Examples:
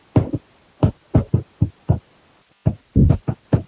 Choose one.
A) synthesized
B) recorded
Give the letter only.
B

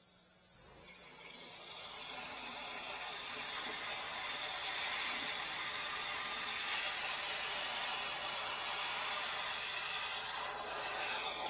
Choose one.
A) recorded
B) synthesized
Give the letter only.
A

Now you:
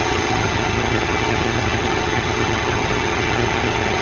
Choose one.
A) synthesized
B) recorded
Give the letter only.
A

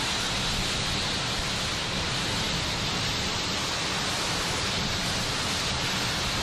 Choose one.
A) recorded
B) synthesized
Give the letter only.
A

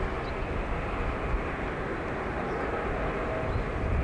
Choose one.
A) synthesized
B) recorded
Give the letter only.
B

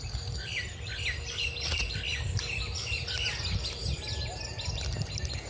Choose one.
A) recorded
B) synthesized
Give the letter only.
A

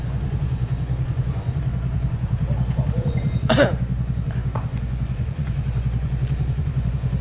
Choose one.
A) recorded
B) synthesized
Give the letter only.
B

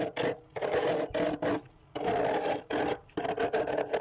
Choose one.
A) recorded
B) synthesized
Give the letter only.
A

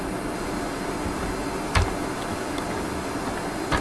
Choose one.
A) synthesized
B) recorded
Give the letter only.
B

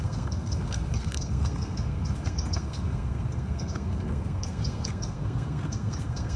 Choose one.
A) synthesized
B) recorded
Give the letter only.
A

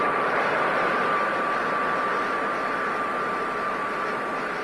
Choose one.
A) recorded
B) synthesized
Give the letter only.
B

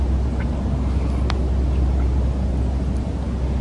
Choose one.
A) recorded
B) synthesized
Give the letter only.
A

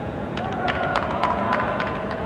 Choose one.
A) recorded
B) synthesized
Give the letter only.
B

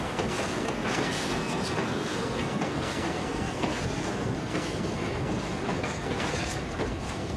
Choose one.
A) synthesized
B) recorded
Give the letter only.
A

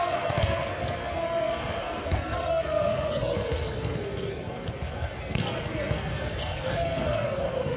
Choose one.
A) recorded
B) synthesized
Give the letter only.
B